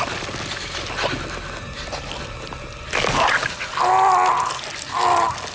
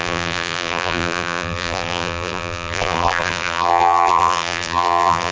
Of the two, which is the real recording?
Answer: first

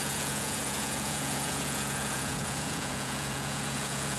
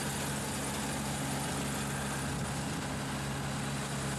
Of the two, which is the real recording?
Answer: second